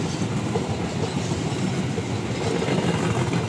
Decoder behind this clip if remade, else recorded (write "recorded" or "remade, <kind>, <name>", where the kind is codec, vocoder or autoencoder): recorded